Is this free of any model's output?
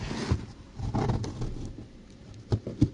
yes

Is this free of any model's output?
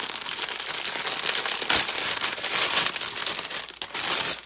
yes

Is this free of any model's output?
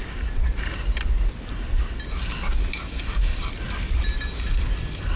yes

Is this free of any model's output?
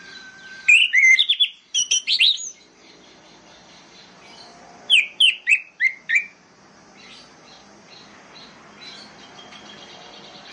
no